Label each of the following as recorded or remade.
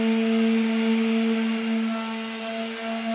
recorded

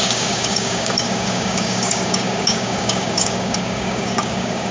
remade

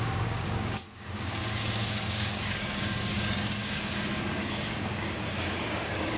remade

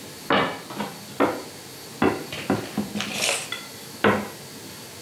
recorded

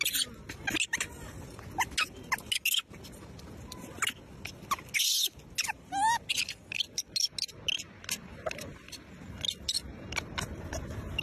recorded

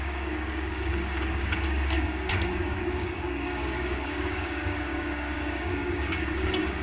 remade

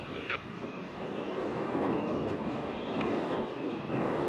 remade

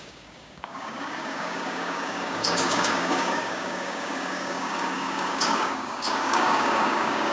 remade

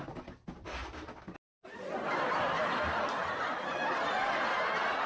recorded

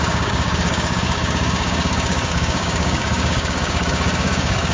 remade